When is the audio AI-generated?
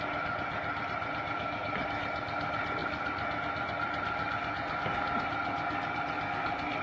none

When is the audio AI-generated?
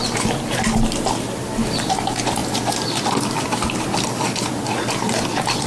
none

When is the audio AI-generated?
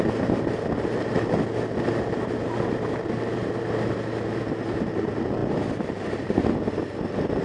none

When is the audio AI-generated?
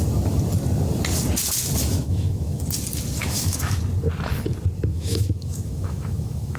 1.8-2.6 (autoencoder, DAC-VAE); 3.2-3.8; 4.9-6.6